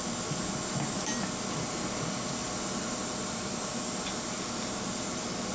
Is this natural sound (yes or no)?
yes